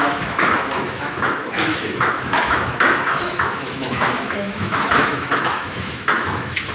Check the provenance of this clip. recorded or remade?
remade